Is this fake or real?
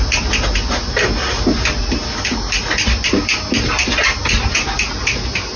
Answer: real